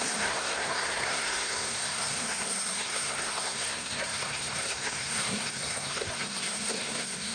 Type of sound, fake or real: fake